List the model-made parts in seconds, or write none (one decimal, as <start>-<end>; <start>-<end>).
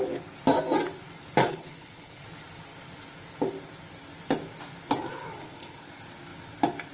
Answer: 1.4-2.2; 5.1-5.8